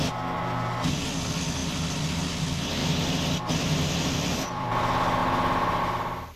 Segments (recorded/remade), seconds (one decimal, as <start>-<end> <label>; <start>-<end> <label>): 0.0-1.6 recorded; 1.6-2.4 remade; 2.4-2.8 recorded; 2.8-4.8 remade; 4.8-6.4 recorded